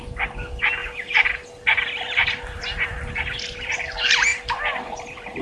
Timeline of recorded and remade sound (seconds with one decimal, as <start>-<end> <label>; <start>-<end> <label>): 0.0-0.8 recorded; 0.8-3.9 remade; 3.9-4.3 recorded; 4.3-5.4 remade